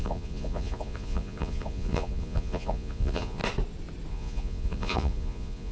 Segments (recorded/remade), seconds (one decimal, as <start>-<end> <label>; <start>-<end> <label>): 0.0-3.4 remade; 3.4-4.1 recorded; 4.1-5.7 remade